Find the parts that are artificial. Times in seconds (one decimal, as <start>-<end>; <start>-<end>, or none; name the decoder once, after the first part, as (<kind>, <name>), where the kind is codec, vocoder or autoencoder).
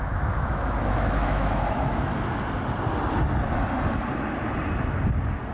0.0-2.1 (autoencoder, DAC-VAE)